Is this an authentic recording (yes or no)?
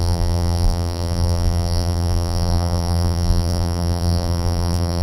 no